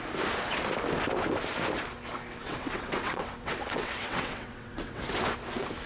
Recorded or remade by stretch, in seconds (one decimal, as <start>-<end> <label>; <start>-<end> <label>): 0.0-2.4 recorded; 2.4-5.0 remade; 5.0-5.9 recorded